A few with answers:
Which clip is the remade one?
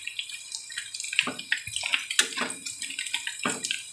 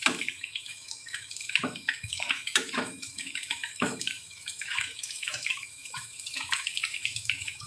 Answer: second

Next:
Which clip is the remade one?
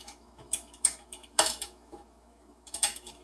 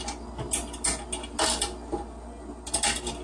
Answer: first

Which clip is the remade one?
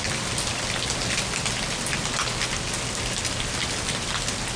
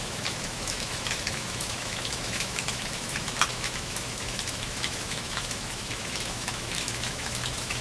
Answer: second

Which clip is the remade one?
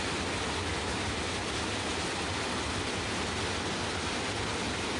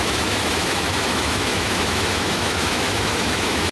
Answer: second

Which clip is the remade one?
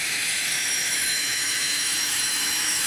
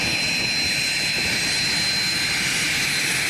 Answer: first